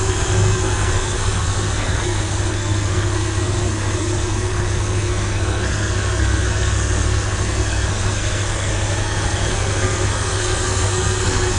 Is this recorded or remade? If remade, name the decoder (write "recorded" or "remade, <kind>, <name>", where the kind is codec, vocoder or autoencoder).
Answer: remade, codec, SNAC